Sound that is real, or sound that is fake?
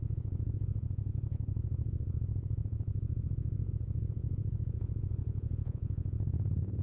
fake